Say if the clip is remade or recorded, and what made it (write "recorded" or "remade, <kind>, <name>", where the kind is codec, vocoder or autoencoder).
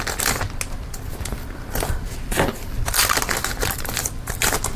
recorded